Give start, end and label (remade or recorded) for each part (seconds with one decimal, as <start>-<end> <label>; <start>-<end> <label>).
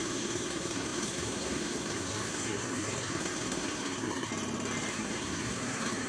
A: 0.0-4.3 remade; 4.3-4.9 recorded; 4.9-6.1 remade